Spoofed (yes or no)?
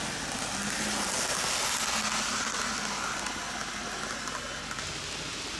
no